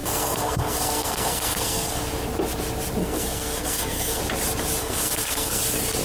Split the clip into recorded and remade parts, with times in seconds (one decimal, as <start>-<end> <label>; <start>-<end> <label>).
0.0-2.0 remade; 2.0-3.0 recorded; 3.0-4.2 remade; 4.2-4.8 recorded; 4.8-5.6 remade; 5.6-6.0 recorded